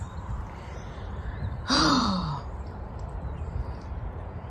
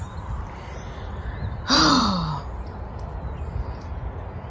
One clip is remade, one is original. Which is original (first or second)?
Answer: second